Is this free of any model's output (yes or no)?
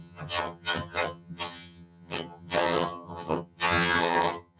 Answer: no